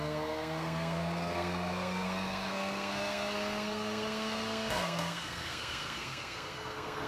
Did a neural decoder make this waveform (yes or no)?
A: yes